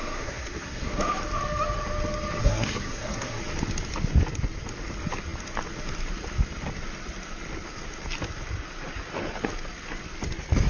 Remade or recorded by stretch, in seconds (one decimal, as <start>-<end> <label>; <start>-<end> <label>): 0.0-0.9 remade; 0.9-2.4 recorded; 2.4-3.4 remade; 3.4-10.7 recorded